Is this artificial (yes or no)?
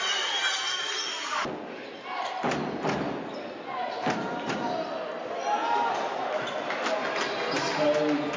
no